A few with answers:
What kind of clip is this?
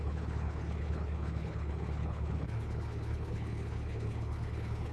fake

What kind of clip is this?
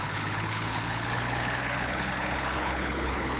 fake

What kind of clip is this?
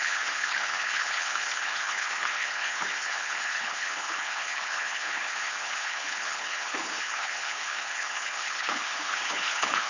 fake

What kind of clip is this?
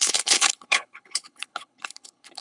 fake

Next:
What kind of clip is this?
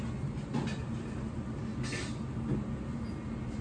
real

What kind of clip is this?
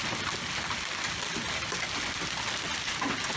real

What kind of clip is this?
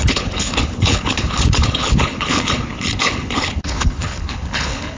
fake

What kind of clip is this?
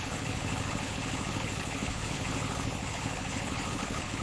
fake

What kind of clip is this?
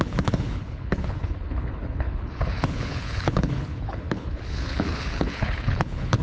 fake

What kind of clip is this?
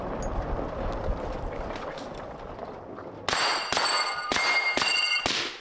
real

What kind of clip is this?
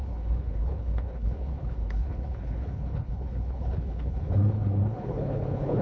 fake